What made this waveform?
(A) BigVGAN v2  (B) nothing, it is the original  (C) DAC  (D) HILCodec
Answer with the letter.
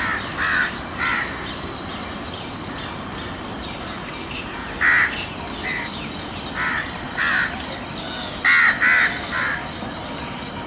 B